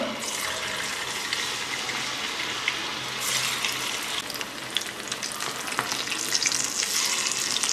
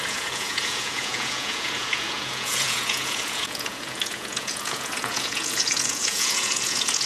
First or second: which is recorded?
first